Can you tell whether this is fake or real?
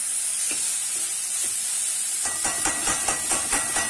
real